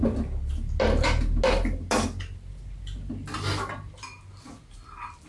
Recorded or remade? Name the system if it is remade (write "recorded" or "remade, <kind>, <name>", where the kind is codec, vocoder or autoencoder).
recorded